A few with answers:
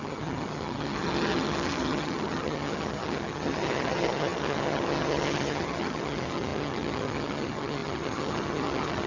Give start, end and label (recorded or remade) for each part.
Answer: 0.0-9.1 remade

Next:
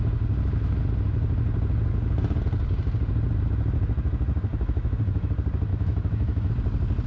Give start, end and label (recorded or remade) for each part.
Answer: 0.0-4.5 recorded; 4.5-5.3 remade; 5.3-5.7 recorded; 5.7-6.5 remade; 6.5-7.1 recorded

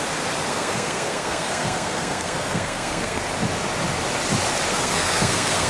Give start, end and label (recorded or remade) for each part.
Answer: 0.0-0.5 recorded; 0.5-3.2 remade; 3.2-4.7 recorded; 4.7-5.7 remade